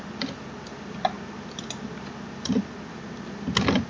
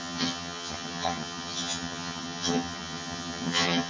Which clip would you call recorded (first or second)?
first